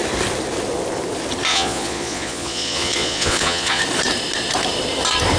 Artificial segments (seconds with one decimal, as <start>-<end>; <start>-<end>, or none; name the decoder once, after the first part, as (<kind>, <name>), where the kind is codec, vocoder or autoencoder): 1.5-3.8 (vocoder, Vocos)